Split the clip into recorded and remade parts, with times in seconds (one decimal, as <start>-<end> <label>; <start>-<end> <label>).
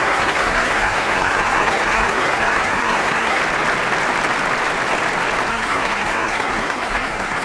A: 0.0-3.4 remade; 3.4-5.5 recorded; 5.5-7.4 remade